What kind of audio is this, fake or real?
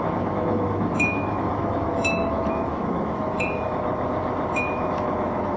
fake